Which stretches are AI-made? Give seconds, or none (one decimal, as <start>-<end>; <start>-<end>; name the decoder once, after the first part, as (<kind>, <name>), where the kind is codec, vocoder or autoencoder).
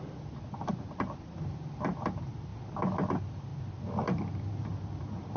0.0-2.5 (vocoder, BigVGAN v2); 3.1-3.5; 4.5-5.4